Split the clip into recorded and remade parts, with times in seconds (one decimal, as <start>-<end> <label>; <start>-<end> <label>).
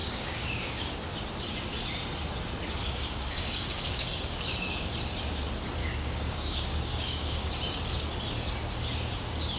0.0-1.0 remade; 1.0-2.8 recorded; 2.8-4.9 remade; 4.9-5.8 recorded; 5.8-7.5 remade; 7.5-9.6 recorded